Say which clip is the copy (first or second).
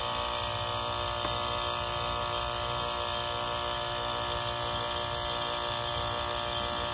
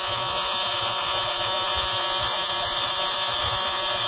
second